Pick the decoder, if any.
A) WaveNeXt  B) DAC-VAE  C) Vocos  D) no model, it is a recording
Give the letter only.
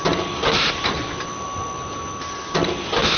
D